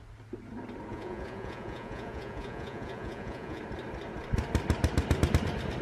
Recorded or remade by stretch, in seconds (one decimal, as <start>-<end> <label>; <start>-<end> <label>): 0.0-0.9 recorded; 0.9-3.6 remade; 3.6-5.8 recorded